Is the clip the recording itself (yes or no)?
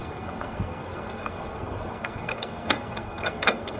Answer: no